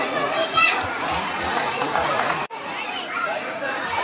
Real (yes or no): no